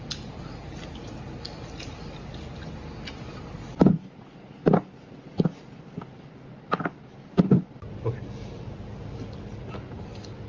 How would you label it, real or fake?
real